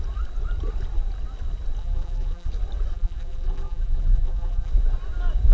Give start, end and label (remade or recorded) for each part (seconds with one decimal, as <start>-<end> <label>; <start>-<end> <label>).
0.0-1.8 recorded; 1.8-2.5 remade; 2.5-2.9 recorded; 2.9-4.7 remade; 4.7-5.5 recorded